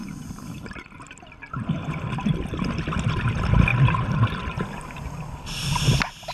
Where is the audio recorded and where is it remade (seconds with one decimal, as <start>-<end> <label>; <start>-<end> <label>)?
0.0-6.3 recorded